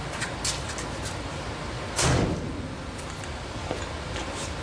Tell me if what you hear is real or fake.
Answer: real